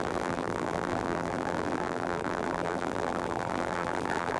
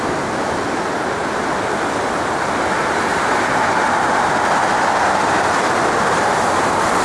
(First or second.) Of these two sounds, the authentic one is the second